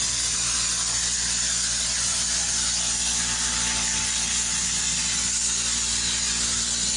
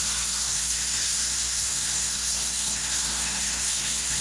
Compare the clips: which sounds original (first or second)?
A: first